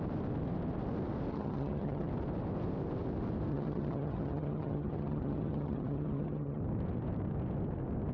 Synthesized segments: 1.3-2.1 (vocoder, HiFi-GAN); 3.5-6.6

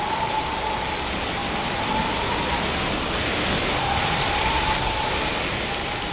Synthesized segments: none

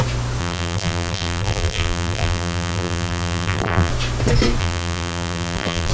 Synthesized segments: 0.4-3.9 (vocoder, BigVGAN v2); 4.6-5.9

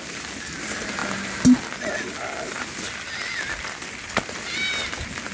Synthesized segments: none

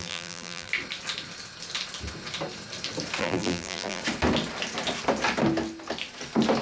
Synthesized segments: 0.0-0.7 (vocoder, BigVGAN v2); 3.2-4.0